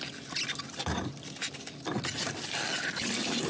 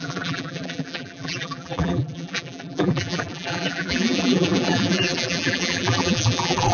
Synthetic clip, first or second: second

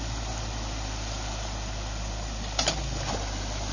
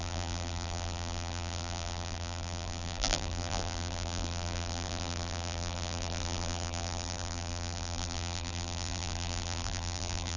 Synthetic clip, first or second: second